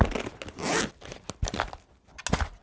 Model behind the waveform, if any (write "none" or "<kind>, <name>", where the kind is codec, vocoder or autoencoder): none